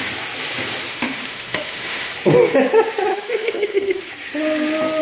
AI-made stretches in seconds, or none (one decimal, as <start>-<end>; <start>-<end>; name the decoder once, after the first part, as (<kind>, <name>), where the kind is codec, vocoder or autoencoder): 0.9-2.1 (autoencoder, DAC-VAE); 3.1-4.1